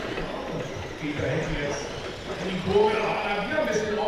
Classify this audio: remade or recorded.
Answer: recorded